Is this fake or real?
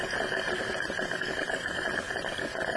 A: real